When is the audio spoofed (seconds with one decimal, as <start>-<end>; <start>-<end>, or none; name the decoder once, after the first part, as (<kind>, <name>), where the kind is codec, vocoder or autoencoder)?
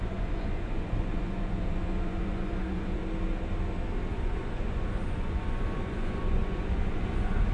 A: 0.0-3.0 (vocoder, Vocos); 4.1-7.5